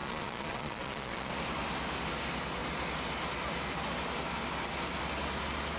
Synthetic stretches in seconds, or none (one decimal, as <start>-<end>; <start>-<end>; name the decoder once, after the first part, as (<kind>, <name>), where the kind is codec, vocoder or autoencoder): 0.0-1.3 (vocoder, Vocos)